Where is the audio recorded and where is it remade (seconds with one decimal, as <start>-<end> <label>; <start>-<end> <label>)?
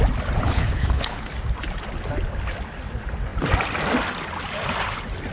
0.0-0.4 recorded; 0.4-1.3 remade; 1.3-5.3 recorded